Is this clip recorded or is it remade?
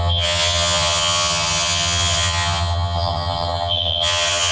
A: remade